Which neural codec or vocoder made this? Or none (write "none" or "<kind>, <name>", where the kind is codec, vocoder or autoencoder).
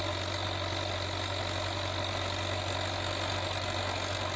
none